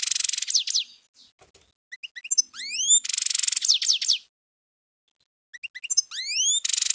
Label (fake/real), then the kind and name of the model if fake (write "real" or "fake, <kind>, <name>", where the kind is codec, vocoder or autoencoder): real